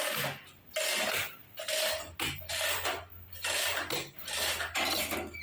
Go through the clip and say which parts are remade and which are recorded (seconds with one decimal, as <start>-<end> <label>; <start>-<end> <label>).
0.0-5.4 recorded